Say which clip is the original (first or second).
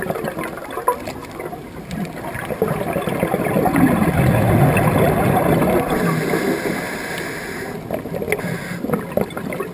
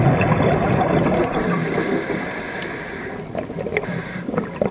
first